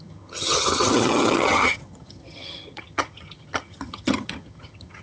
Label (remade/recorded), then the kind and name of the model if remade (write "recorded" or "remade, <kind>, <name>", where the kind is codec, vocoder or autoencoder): remade, vocoder, HiFi-GAN